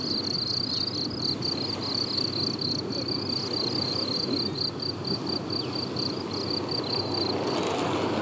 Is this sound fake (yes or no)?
no